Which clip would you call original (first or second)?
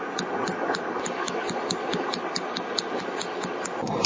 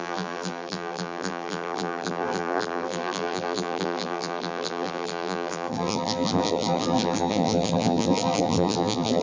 first